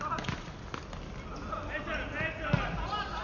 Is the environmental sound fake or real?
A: real